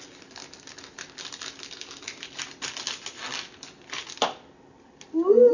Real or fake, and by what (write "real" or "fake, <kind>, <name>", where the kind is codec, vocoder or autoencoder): real